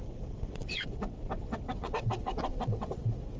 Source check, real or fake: fake